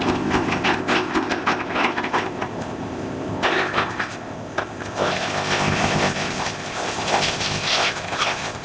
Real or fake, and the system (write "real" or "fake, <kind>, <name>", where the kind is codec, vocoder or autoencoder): fake, codec, ZipCodec